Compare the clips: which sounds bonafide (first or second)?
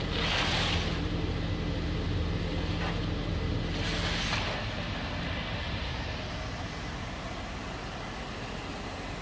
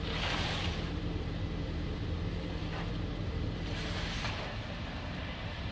first